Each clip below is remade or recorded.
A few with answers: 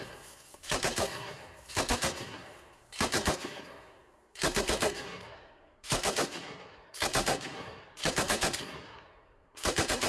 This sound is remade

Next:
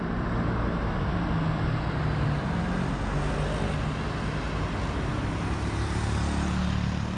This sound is recorded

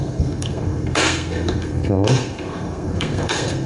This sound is remade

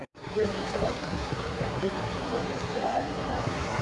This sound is remade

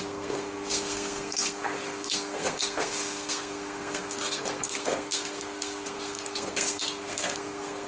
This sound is remade